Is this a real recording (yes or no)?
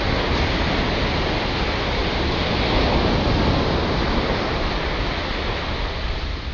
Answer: yes